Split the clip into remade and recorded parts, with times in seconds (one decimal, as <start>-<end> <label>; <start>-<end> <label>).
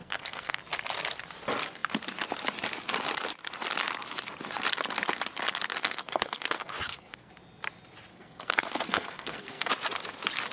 0.0-0.6 remade; 0.6-5.7 recorded; 5.7-7.3 remade; 7.3-8.1 recorded; 8.1-9.7 remade; 9.7-10.5 recorded